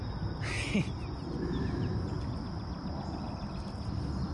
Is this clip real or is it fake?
real